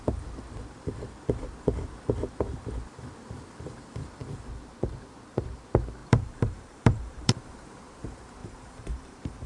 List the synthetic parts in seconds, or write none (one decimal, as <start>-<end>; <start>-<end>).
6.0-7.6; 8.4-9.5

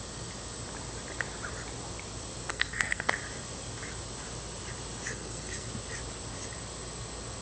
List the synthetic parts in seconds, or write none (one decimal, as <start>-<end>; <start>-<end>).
2.5-3.1; 5.1-5.7

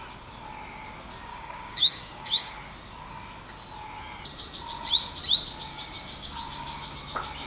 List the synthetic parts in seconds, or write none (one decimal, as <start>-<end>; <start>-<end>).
1.3-2.5; 5.7-7.0